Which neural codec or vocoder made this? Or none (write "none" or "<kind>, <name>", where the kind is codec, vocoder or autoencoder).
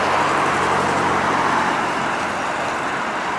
none